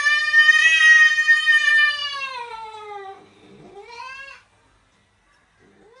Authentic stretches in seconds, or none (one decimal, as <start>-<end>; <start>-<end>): 0.0-2.0; 3.4-6.0